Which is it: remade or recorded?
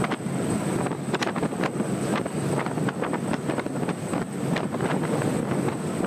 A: recorded